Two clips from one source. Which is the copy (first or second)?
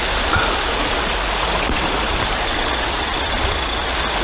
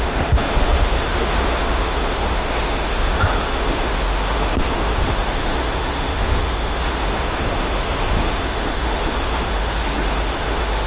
second